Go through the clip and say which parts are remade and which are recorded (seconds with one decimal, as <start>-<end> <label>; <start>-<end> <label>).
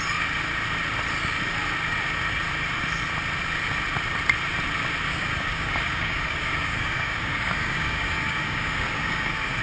0.0-5.1 recorded; 5.1-9.6 remade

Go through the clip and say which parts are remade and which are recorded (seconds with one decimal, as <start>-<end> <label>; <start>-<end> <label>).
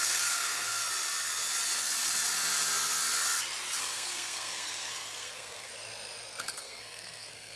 0.0-0.8 remade; 0.8-3.8 recorded; 3.8-5.7 remade; 5.7-6.4 recorded; 6.4-7.6 remade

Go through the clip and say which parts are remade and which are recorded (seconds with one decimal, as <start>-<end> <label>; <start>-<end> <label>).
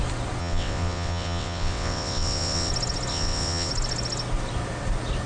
0.0-0.4 recorded; 0.4-2.7 remade; 2.7-3.1 recorded; 3.1-3.7 remade; 3.7-5.3 recorded